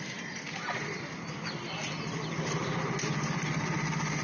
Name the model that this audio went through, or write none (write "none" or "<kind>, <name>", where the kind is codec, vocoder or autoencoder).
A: none